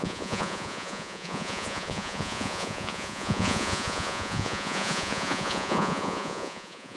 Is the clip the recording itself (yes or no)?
no